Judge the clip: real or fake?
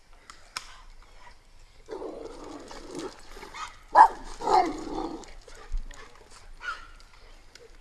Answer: real